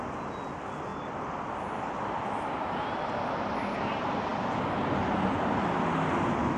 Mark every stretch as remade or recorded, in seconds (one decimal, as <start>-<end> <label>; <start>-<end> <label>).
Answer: 0.0-0.9 recorded; 0.9-3.0 remade; 3.0-4.3 recorded; 4.3-5.1 remade; 5.1-6.6 recorded